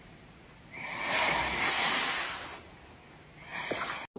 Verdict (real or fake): real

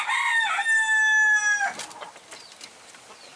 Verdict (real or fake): real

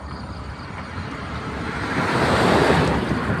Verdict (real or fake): fake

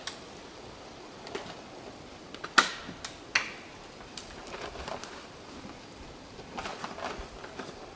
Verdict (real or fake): real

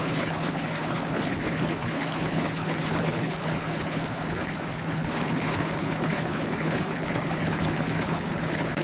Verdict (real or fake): fake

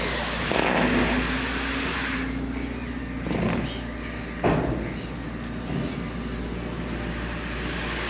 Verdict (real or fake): real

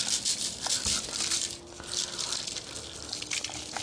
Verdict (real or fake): real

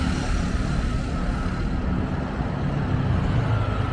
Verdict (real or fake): real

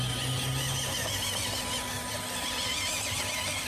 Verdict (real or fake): real